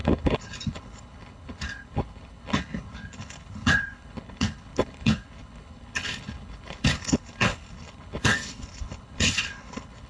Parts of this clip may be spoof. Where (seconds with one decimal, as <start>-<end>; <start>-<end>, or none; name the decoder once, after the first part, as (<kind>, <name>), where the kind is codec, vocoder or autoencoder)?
0.0-10.1 (codec, HILCodec)